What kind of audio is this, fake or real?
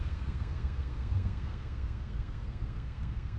fake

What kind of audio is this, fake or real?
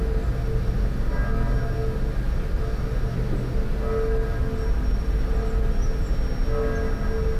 real